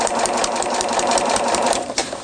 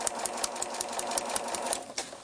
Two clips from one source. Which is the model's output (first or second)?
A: first